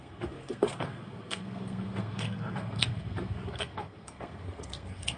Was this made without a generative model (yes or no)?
no